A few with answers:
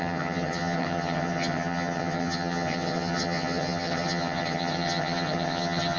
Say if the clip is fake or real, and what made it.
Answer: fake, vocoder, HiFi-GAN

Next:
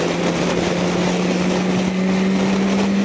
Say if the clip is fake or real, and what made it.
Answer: real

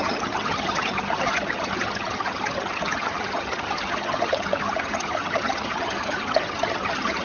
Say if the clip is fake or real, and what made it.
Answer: fake, vocoder, HiFi-GAN